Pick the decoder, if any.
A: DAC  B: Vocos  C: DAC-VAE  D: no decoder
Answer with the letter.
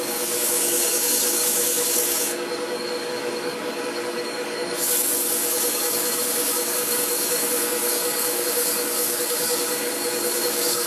A